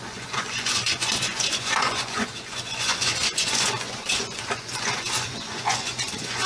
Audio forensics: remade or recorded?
remade